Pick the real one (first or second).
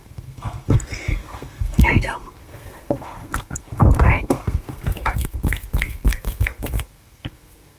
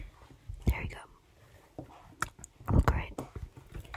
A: second